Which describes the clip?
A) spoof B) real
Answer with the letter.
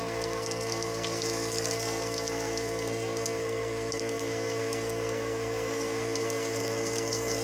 A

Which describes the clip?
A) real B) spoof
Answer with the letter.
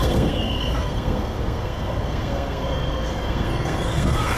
B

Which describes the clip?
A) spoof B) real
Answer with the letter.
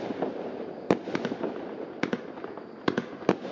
B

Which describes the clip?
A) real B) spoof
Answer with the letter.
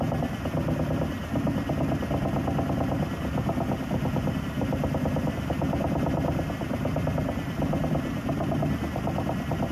A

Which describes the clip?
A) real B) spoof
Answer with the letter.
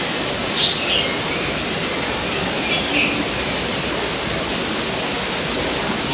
A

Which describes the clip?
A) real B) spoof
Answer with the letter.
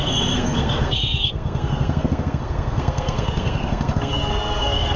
B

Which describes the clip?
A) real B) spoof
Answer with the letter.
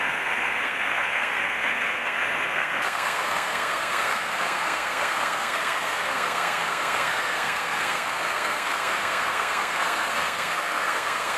B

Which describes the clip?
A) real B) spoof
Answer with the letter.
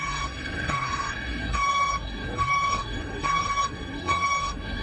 B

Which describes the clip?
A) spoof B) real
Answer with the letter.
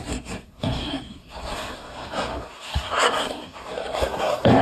A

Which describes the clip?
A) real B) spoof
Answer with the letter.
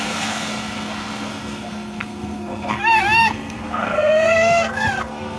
B